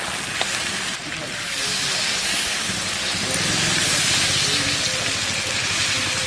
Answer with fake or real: real